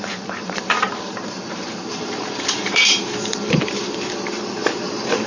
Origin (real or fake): fake